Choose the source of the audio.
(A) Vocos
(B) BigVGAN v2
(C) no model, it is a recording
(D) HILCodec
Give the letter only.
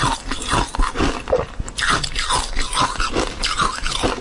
C